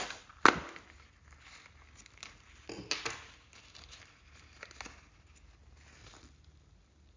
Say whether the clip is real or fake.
real